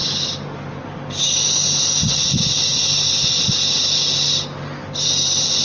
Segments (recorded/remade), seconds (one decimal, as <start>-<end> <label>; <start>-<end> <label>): 0.0-5.6 recorded